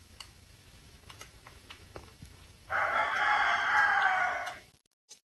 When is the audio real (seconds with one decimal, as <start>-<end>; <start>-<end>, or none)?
3.0-4.5